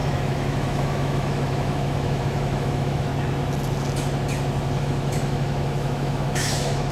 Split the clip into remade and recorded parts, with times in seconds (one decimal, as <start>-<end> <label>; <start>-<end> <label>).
0.0-3.1 remade; 3.1-4.8 recorded; 4.8-6.9 remade